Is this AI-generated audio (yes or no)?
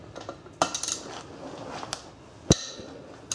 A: no